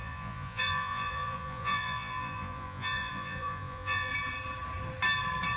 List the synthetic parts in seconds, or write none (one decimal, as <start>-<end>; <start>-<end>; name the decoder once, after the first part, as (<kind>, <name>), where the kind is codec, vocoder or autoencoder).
0.0-4.1 (vocoder, Vocos)